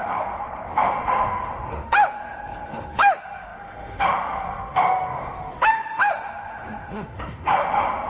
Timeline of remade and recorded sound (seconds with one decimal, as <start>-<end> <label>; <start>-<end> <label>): 0.0-8.1 remade